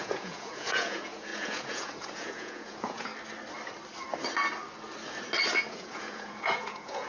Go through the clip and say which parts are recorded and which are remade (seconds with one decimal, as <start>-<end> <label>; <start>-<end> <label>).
0.0-3.1 remade; 3.1-5.7 recorded; 5.7-7.1 remade